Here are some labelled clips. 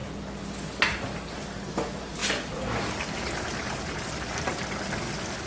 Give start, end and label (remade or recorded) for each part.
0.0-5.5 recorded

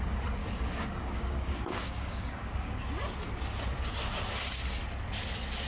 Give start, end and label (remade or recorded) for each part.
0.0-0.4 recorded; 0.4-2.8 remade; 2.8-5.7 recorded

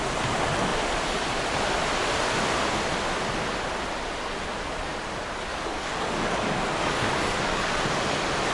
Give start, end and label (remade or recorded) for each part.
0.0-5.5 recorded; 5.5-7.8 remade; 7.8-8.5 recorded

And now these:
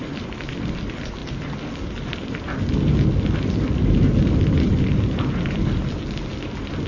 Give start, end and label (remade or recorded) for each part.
0.0-6.9 recorded

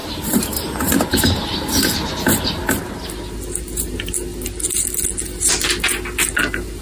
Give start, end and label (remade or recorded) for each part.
0.0-6.8 recorded